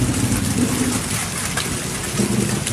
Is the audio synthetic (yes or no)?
no